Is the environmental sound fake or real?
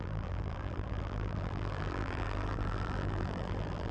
fake